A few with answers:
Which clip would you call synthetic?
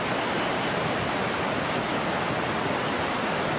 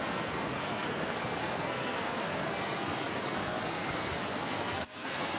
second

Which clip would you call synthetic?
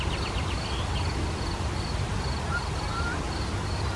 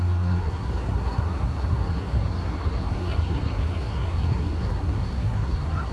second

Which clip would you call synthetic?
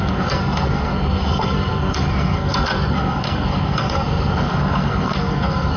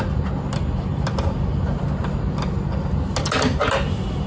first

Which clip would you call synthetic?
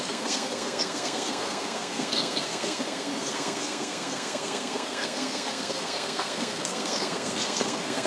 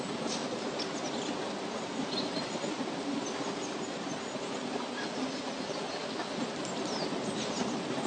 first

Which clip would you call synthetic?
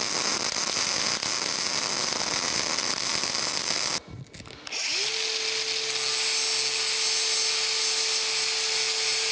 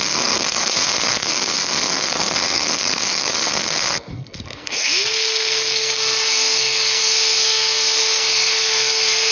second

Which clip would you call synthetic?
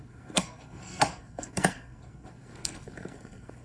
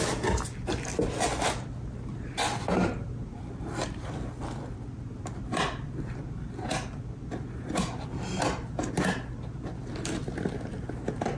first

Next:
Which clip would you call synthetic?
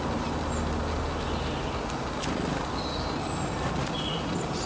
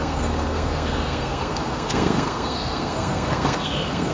second